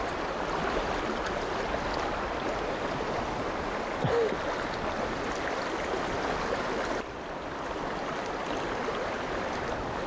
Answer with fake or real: real